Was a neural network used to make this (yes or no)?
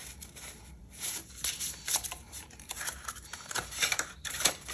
yes